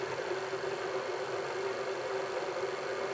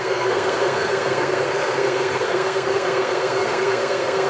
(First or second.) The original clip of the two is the first